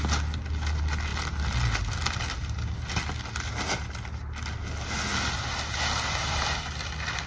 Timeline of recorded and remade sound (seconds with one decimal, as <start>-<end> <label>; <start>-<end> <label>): 0.0-7.3 recorded